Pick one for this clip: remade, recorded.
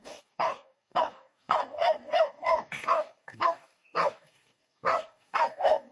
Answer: remade